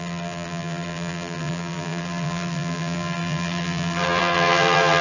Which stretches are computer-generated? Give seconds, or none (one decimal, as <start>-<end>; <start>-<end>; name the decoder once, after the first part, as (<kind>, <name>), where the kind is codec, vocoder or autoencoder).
0.0-5.0 (vocoder, BigVGAN v2)